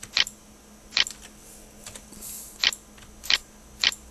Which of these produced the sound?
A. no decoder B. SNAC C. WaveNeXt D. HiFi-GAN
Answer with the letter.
A